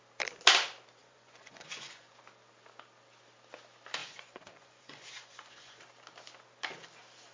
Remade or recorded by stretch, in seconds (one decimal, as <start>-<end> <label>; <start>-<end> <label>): 0.0-1.0 recorded; 1.0-2.2 remade; 2.2-4.0 recorded; 4.0-5.8 remade; 5.8-7.3 recorded